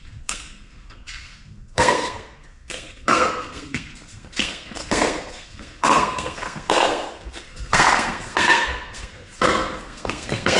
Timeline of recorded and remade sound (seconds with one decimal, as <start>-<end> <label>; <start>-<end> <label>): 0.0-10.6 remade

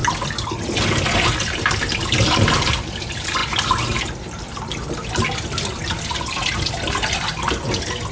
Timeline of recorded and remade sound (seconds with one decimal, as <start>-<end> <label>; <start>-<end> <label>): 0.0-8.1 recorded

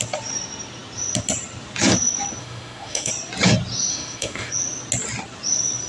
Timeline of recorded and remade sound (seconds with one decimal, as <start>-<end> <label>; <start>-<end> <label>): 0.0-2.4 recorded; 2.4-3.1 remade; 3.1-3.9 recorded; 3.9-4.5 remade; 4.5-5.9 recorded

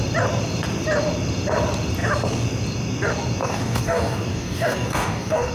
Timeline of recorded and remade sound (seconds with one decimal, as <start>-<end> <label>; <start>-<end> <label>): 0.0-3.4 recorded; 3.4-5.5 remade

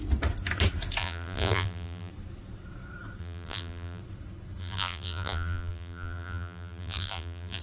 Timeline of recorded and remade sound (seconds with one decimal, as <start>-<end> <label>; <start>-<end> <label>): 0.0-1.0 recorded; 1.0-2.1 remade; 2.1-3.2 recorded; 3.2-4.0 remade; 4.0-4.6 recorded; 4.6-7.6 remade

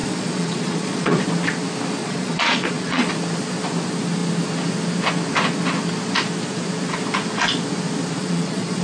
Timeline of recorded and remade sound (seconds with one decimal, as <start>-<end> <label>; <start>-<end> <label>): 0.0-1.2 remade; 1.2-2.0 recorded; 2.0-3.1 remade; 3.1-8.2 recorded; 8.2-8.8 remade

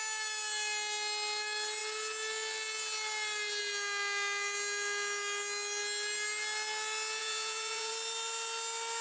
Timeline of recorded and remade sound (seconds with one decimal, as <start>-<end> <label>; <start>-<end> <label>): 0.0-7.2 recorded; 7.2-7.9 remade; 7.9-9.0 recorded

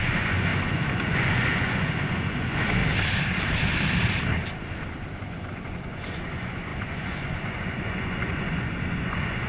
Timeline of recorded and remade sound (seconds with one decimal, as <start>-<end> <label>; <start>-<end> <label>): 0.0-2.8 remade; 2.8-5.2 recorded; 5.2-9.5 remade